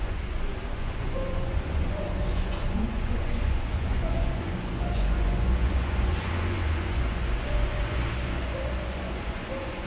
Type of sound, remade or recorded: remade